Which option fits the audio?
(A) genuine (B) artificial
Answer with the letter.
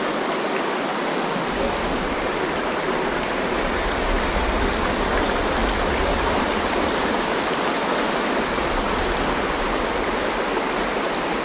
A